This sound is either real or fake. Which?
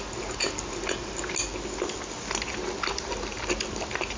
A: real